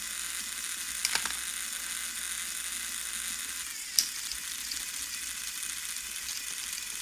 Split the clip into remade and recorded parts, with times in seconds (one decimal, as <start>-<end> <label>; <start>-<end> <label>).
0.0-7.0 recorded